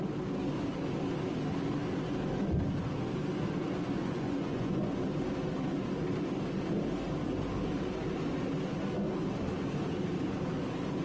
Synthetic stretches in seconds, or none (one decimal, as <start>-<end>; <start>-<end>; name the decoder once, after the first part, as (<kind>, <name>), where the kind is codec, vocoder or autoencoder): 4.0-4.9 (vocoder, Vocos)